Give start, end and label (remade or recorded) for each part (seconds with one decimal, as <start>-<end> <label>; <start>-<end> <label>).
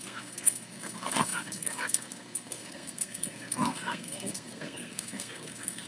0.0-5.9 remade